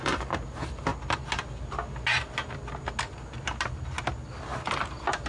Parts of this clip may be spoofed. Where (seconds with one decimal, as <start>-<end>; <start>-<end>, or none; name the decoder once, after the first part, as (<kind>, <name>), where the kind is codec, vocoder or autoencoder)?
none